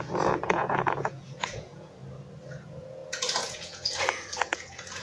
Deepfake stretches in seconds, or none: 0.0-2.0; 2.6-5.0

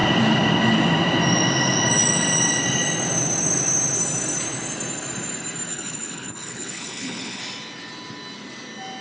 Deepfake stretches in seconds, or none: 5.7-7.4

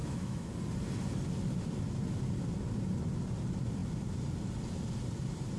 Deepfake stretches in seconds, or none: 0.0-0.5

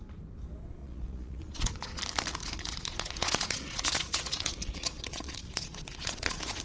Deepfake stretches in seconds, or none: 0.8-2.0; 2.4-6.6

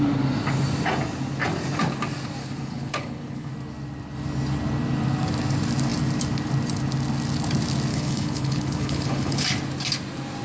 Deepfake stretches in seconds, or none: 2.4-3.5; 7.9-9.4

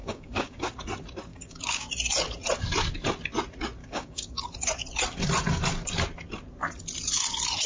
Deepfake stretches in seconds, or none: 0.0-0.7; 1.3-1.9; 3.8-4.4

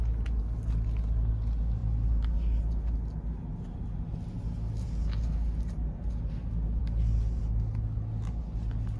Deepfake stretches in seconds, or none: none